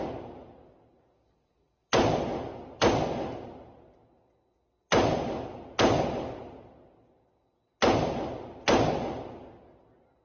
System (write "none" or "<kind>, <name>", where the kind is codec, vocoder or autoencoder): none